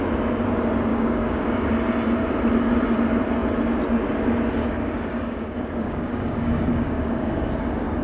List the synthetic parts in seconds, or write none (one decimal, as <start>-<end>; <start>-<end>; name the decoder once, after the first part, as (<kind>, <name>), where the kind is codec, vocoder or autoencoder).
0.9-1.7 (codec, DAC); 4.6-7.6